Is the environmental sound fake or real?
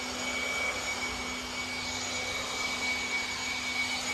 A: real